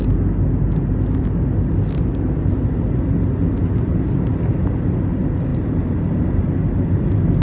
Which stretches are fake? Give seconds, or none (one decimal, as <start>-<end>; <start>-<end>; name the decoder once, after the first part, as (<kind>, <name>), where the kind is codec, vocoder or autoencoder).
5.5-6.4 (vocoder, BigVGAN v2)